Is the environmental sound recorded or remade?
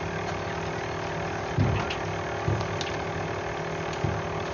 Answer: recorded